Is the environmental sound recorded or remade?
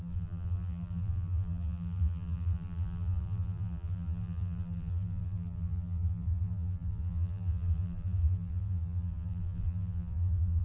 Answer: remade